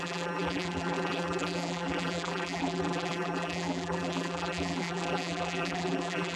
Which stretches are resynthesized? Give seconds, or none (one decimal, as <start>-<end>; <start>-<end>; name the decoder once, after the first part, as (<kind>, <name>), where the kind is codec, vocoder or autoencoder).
0.0-6.4 (vocoder, BigVGAN v2)